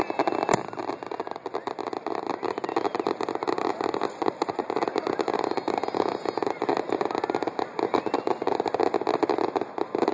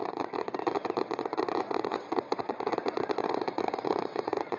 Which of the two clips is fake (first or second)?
second